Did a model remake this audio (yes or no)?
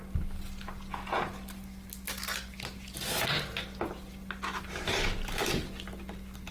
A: no